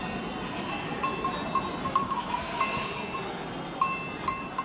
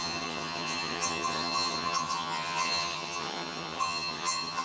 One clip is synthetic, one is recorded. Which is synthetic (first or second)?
second